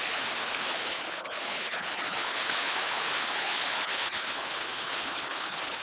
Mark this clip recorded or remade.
remade